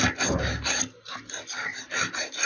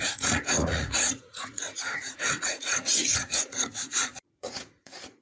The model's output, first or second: second